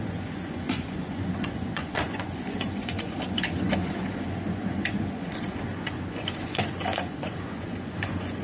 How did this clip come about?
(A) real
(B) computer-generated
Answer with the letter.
B